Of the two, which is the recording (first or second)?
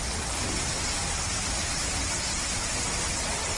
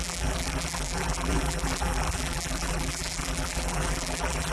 first